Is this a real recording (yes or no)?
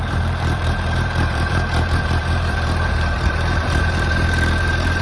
no